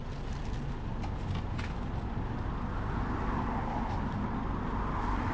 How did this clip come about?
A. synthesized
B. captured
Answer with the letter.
B